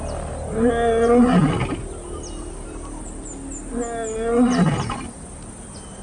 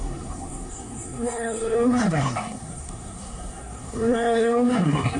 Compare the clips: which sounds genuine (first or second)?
first